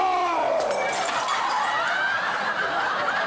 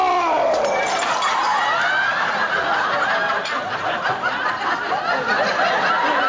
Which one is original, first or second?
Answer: second